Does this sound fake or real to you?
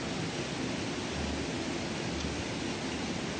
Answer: real